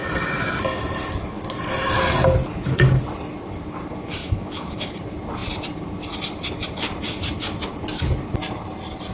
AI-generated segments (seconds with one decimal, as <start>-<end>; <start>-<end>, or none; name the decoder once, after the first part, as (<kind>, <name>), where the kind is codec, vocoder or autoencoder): 4.2-4.9 (autoencoder, DAC-VAE)